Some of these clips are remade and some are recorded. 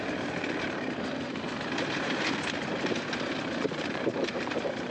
remade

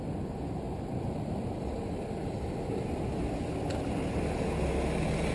recorded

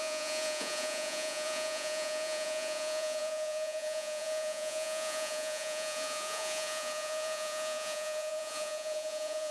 remade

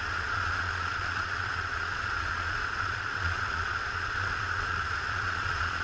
remade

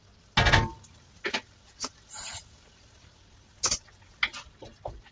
recorded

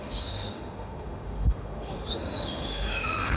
remade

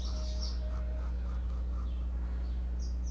recorded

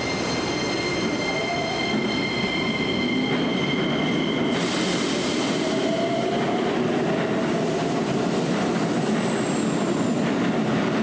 recorded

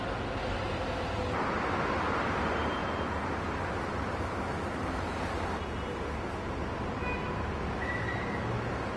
recorded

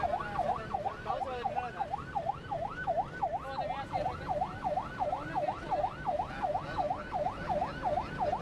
recorded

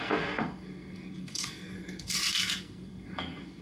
remade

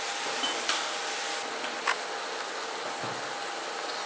recorded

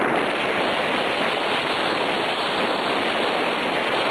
recorded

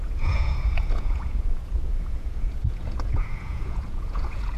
remade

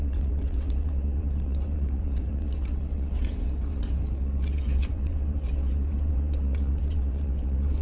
remade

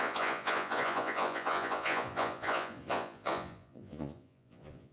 remade